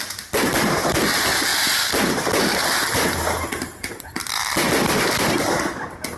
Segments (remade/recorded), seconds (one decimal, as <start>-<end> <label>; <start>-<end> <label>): 0.0-6.2 recorded